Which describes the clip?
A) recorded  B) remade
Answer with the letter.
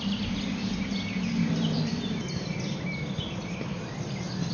A